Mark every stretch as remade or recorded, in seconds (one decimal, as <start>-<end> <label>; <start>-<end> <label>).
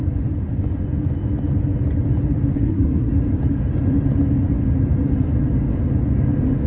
0.0-2.5 recorded; 2.5-3.1 remade; 3.1-6.7 recorded